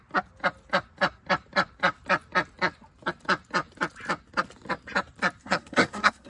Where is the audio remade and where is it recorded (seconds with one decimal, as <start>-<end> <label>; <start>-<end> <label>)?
0.0-5.4 recorded; 5.4-6.3 remade